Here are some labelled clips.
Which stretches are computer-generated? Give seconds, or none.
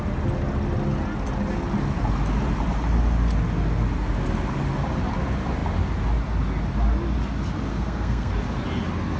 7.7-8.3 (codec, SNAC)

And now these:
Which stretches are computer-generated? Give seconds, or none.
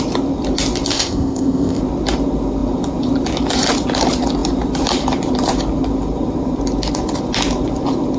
0.9-1.8 (codec, ZipCodec)